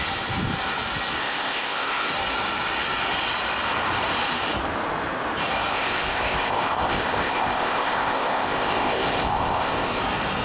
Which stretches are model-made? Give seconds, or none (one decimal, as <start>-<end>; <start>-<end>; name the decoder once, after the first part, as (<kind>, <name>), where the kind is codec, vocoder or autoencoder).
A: 1.2-2.1 (codec, ZipCodec); 5.7-10.0